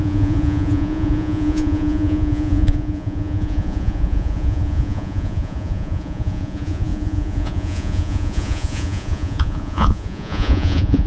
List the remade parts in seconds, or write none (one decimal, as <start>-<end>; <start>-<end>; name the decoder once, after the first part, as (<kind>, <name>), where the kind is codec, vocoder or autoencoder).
0.0-11.1 (vocoder, Vocos)